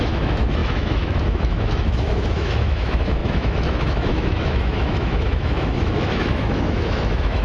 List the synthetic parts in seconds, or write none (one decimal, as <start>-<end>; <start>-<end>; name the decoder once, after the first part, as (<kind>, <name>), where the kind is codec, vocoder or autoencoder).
0.0-7.4 (autoencoder, DAC-VAE)